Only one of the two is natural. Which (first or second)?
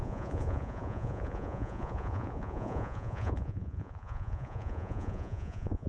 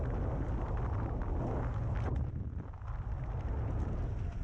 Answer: second